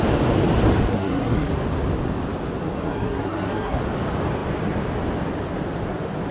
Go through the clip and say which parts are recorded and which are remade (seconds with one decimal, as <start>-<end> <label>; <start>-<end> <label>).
0.0-0.9 recorded; 0.9-1.5 remade; 1.5-2.8 recorded; 2.8-3.8 remade; 3.8-6.3 recorded

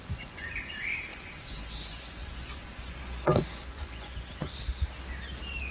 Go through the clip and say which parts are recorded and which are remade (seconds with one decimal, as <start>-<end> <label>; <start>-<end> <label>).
0.0-0.7 remade; 0.7-1.1 recorded; 1.1-4.5 remade; 4.5-5.7 recorded

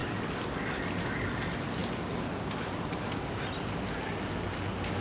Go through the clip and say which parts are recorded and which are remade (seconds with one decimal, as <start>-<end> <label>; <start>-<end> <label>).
0.0-5.0 recorded

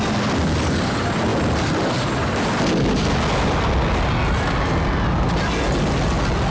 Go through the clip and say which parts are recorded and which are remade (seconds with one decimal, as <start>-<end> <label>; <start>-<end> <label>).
0.0-6.5 recorded

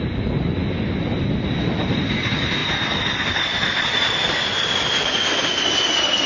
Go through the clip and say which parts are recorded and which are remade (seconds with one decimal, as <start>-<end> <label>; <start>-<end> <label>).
0.0-2.6 recorded; 2.6-6.3 remade